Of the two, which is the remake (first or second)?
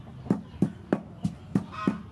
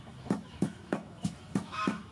second